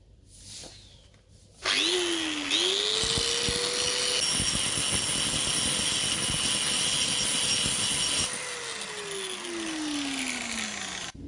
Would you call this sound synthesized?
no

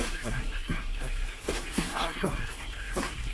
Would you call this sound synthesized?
yes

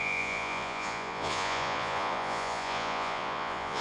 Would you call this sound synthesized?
yes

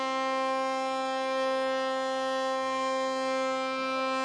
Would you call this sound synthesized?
no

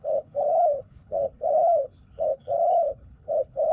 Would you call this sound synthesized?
yes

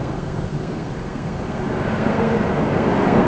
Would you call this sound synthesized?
yes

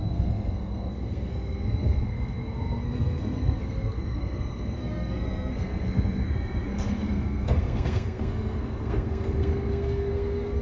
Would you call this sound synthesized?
yes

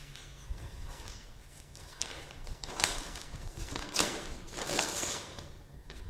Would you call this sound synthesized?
yes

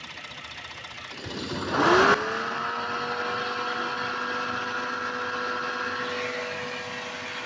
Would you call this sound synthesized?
no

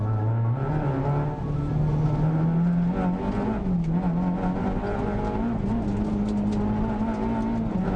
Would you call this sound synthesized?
no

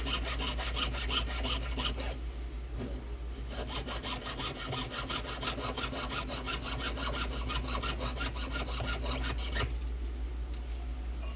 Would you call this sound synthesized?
no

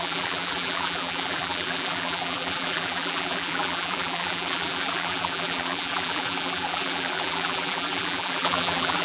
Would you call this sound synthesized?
yes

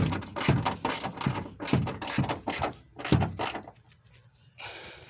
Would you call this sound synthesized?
no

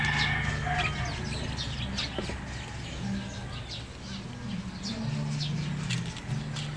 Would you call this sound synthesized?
no